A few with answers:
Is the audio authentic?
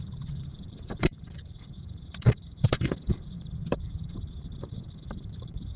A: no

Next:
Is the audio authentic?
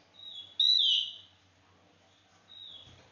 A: yes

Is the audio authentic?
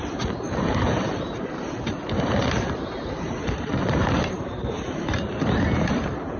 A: no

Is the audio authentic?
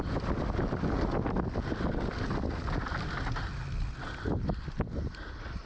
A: yes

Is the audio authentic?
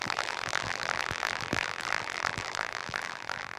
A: no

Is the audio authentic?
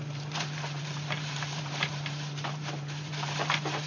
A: no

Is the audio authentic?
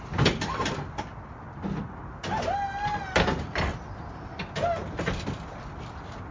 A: yes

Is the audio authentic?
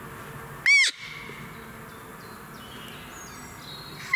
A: yes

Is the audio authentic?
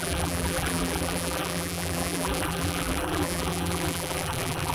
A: no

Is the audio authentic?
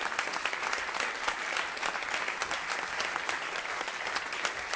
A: yes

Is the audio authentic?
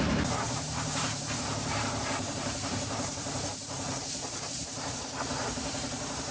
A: no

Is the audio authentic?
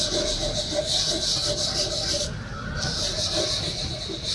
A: no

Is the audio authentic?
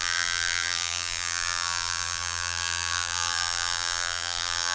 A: no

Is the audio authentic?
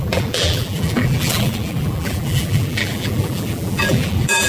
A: no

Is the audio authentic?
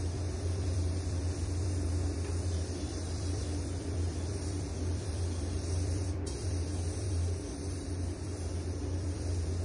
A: no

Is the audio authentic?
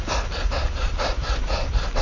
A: yes